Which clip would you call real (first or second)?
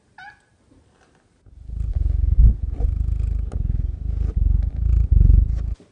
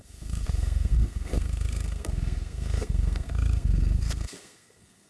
first